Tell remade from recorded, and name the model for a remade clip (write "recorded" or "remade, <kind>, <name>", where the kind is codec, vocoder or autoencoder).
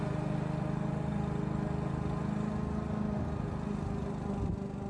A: recorded